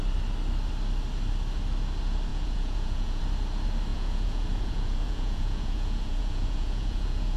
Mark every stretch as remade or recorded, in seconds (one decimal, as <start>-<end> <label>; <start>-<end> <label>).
0.0-2.3 recorded; 2.3-3.2 remade; 3.2-3.9 recorded; 3.9-7.4 remade